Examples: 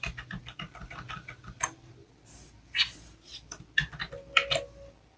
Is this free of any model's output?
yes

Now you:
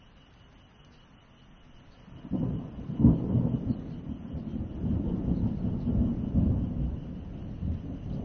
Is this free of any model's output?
yes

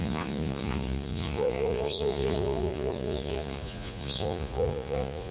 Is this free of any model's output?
no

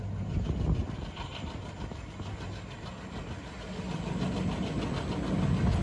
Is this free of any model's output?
yes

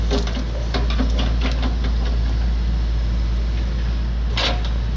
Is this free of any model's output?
yes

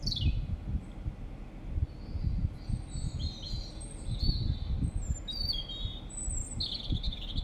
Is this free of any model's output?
yes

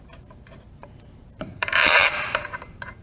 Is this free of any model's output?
no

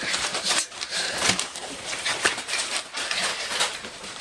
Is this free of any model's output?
no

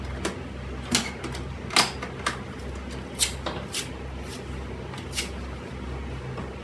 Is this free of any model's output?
yes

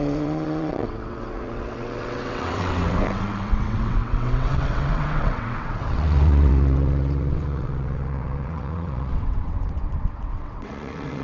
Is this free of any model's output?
no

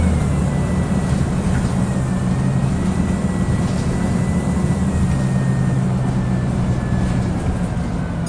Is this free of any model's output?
yes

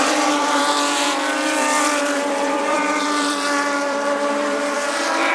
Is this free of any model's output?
no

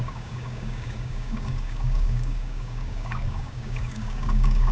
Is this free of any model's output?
no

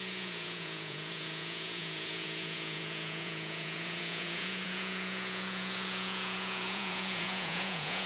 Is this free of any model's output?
no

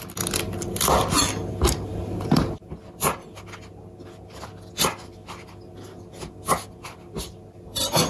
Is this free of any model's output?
yes